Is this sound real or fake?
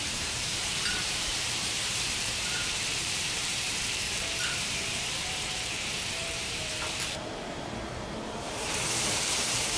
fake